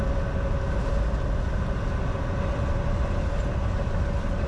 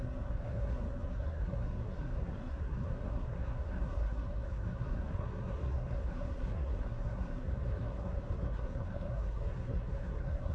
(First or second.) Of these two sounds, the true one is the first